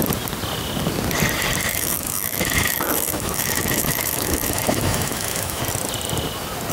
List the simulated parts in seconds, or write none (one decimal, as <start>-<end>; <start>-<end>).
1.6-5.6